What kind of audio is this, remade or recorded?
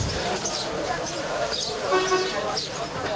remade